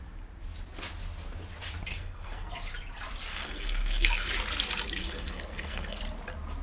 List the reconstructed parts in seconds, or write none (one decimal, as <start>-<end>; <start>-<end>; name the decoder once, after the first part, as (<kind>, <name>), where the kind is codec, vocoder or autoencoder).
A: 1.9-2.5 (codec, SNAC); 3.3-4.3; 5.0-6.0